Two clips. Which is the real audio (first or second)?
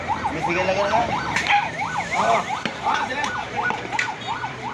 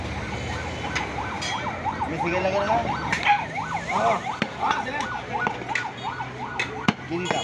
second